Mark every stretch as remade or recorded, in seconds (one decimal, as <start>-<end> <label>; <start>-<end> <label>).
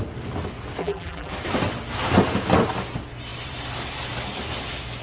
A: 0.0-0.8 recorded; 0.8-1.3 remade; 1.3-5.0 recorded